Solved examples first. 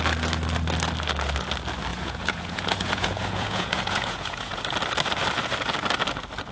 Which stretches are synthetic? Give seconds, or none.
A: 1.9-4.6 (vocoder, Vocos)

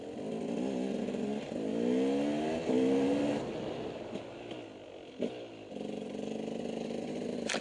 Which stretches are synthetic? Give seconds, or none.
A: none

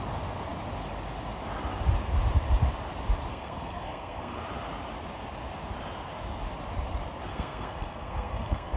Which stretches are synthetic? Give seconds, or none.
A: 3.3-4.4 (codec, SNAC); 7.3-8.8

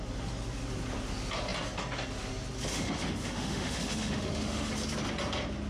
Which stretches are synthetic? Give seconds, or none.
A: 2.7-4.7 (autoencoder, DAC-VAE)

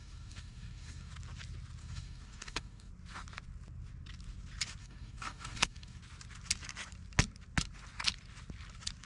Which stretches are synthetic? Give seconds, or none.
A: 0.0-1.1 (codec, DAC); 1.8-2.9; 4.8-6.0